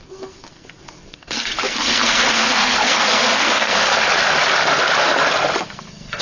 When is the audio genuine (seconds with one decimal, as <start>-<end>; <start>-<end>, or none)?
3.9-5.6